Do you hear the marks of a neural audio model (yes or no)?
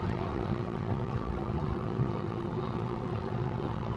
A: yes